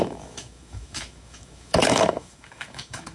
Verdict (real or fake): fake